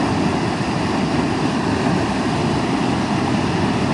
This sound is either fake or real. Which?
real